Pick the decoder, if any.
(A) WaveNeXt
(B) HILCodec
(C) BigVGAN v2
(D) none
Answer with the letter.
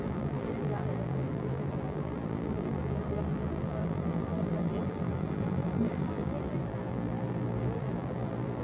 C